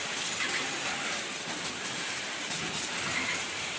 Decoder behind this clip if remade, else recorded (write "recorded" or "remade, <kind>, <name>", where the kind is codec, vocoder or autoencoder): remade, vocoder, BigVGAN v2